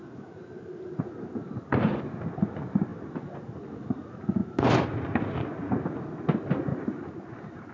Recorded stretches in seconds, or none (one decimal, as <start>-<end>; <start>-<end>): 1.0-6.7; 7.3-7.7